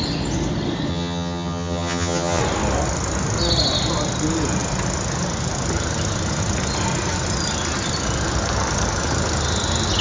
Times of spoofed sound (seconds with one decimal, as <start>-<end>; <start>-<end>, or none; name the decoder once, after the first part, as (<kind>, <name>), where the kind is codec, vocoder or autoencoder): 0.9-2.4 (vocoder, HiFi-GAN)